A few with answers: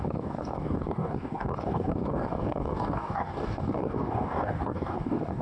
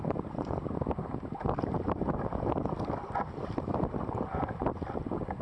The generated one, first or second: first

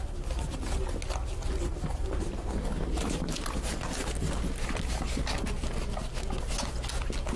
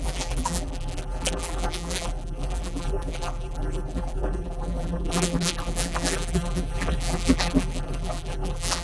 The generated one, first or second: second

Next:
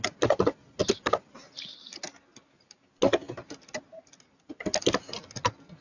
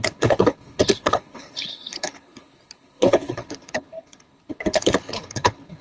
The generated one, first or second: second